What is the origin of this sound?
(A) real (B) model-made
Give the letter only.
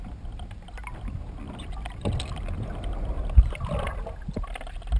A